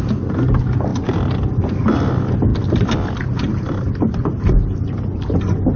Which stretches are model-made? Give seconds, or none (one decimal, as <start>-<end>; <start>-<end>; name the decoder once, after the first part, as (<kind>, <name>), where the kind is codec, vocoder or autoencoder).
none